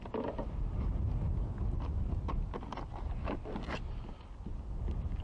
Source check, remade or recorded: recorded